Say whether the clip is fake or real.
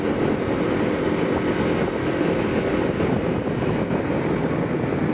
real